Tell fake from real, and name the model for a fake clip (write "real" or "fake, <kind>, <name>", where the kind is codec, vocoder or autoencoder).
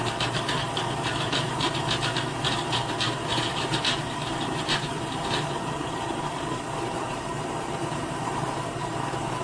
fake, vocoder, BigVGAN v2